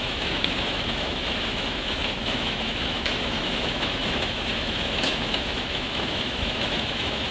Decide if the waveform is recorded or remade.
remade